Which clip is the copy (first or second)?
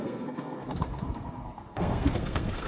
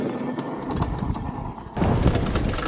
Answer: first